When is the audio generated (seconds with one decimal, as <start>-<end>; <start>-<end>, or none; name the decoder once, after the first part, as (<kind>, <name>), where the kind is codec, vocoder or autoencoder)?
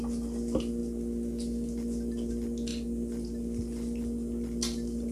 none